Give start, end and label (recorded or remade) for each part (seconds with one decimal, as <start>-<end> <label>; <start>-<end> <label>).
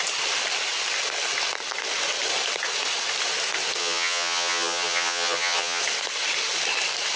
0.0-3.8 recorded; 3.8-5.8 remade; 5.8-7.2 recorded